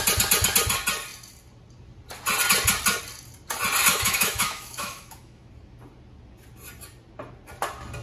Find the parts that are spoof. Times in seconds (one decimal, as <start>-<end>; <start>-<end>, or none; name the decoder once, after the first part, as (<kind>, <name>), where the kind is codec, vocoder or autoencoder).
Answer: 3.9-5.5 (autoencoder, DAC-VAE)